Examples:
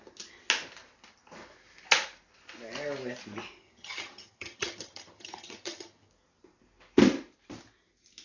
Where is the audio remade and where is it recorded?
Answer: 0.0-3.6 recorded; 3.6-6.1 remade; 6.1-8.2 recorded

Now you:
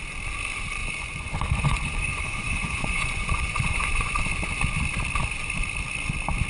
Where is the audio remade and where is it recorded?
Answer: 0.0-0.8 recorded; 0.8-4.2 remade; 4.2-6.5 recorded

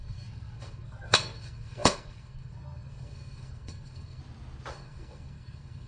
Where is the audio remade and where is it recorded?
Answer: 0.0-4.2 remade; 4.2-4.7 recorded; 4.7-5.9 remade

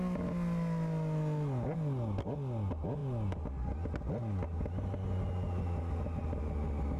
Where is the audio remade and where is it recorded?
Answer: 0.0-7.0 recorded

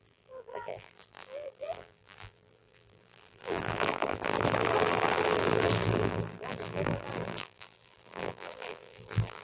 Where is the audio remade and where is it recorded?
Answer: 0.0-9.4 remade

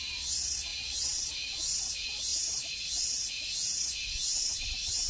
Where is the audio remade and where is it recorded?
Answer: 0.0-5.1 recorded